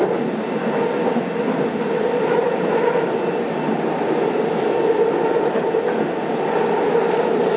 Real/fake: real